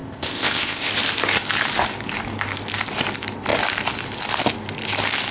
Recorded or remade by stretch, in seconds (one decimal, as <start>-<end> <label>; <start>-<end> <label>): 0.0-0.9 remade; 0.9-5.3 recorded